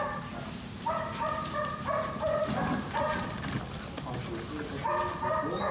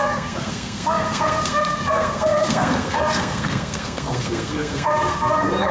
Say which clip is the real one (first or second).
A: first